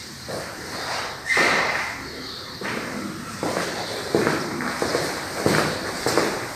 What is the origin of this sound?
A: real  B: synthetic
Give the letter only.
A